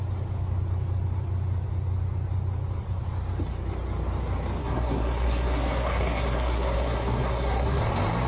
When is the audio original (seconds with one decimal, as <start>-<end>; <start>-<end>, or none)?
0.0-4.6; 7.8-8.3